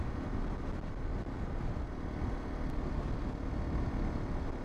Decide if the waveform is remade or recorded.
recorded